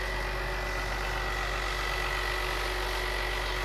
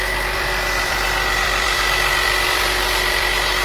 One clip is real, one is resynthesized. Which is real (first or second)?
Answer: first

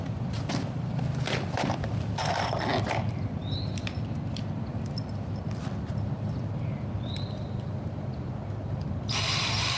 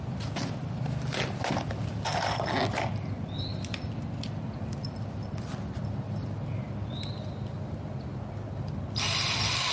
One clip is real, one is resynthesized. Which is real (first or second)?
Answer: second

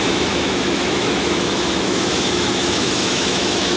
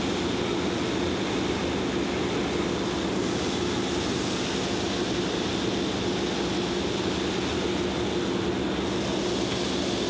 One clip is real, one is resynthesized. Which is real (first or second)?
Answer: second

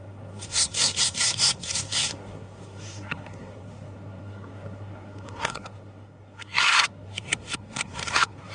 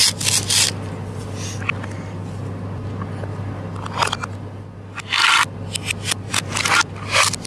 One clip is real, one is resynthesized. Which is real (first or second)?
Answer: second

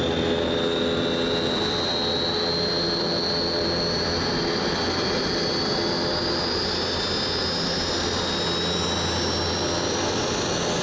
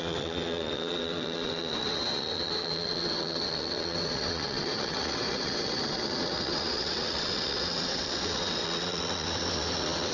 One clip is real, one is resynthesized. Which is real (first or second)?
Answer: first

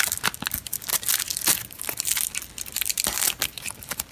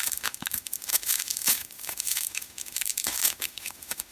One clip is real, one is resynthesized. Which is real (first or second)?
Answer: first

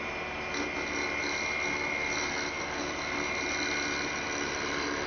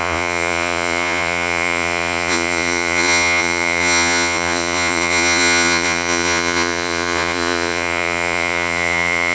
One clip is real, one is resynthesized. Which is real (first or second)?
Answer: first